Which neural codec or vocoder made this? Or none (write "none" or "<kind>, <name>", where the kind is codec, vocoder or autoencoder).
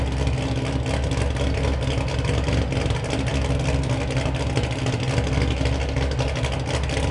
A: none